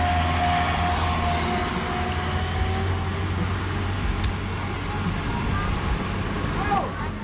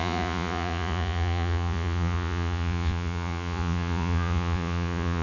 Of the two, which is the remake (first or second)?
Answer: second